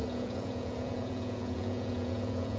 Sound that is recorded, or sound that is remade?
remade